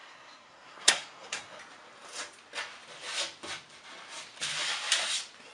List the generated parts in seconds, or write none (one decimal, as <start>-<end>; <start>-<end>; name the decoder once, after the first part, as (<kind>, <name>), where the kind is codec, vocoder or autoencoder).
0.0-1.6 (codec, SNAC)